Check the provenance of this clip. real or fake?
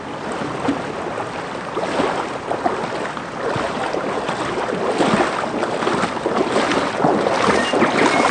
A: real